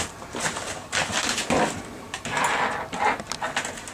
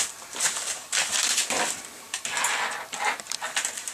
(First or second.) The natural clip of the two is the first